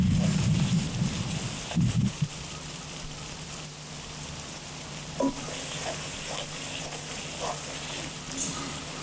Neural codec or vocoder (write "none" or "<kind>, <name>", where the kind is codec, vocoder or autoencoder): none